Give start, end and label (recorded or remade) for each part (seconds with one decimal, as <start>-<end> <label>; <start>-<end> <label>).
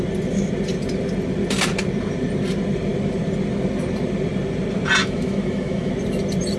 0.0-5.0 recorded; 5.0-5.9 remade; 5.9-6.6 recorded